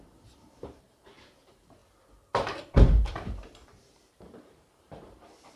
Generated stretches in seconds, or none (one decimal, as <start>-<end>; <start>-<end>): 0.0-1.8; 2.6-5.6